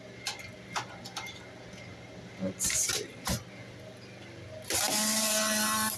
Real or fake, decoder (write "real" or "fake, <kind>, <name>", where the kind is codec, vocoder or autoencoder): real